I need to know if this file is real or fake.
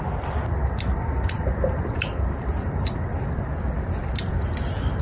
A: fake